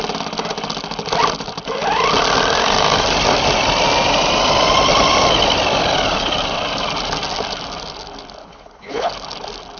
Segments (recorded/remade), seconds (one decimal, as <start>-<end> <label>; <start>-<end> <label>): 0.0-8.4 recorded; 8.4-9.1 remade; 9.1-9.8 recorded